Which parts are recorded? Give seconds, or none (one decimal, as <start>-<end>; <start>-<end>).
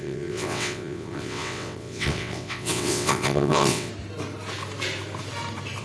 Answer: 3.9-5.8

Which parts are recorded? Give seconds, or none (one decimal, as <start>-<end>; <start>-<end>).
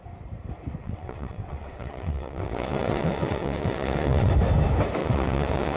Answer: 0.0-0.8; 4.3-5.0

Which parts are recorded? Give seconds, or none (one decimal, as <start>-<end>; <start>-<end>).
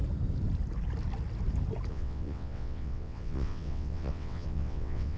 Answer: 0.0-1.9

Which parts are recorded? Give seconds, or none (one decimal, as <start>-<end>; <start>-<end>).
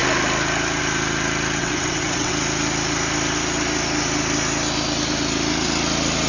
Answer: 0.0-1.6; 2.3-6.3